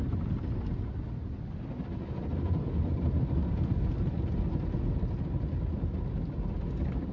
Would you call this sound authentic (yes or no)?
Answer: yes